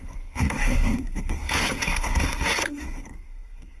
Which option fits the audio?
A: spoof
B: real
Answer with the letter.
A